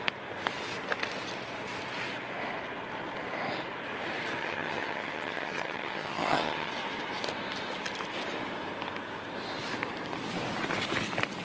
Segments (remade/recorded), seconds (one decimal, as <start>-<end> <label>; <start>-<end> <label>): 0.0-4.4 recorded; 4.4-6.7 remade; 6.7-11.4 recorded